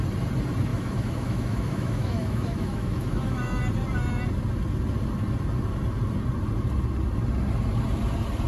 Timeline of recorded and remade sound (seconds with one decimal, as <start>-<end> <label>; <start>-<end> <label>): 0.0-0.7 recorded; 0.7-3.6 remade; 3.6-8.5 recorded